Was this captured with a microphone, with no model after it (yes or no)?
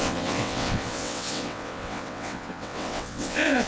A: no